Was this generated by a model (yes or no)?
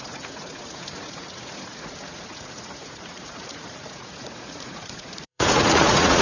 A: yes